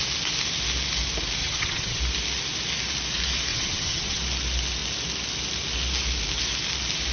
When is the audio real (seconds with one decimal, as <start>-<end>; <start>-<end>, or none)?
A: 0.0-1.4; 2.0-3.5; 4.2-7.1